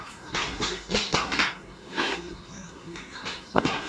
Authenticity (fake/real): fake